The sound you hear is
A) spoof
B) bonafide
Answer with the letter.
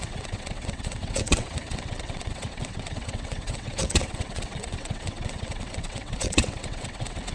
A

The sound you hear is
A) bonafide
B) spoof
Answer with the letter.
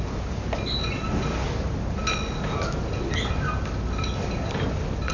A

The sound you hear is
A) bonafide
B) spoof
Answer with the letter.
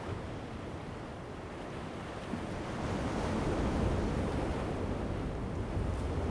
A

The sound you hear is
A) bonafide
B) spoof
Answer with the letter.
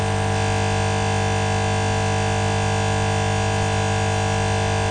A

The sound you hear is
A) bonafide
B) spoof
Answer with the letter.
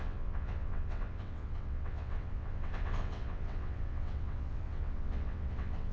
B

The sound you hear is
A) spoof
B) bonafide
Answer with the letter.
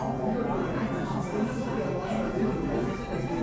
B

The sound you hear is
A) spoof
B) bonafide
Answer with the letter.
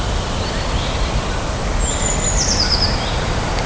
B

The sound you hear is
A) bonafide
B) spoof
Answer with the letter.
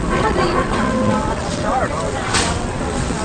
B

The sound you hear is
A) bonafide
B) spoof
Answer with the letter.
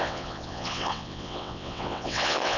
B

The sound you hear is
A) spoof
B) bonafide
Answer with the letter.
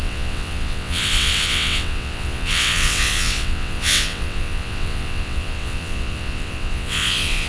A